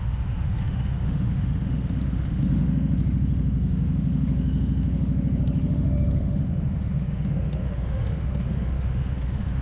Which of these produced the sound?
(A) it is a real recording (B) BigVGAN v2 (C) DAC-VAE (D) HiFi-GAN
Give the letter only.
C